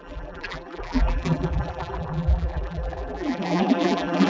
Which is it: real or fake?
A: fake